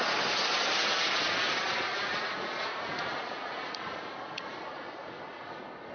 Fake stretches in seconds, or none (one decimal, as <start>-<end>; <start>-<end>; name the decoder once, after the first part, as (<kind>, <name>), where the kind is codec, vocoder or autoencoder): 1.9-5.4 (vocoder, Vocos)